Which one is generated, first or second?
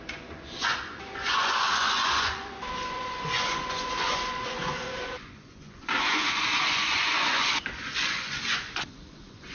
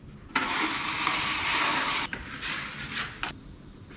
first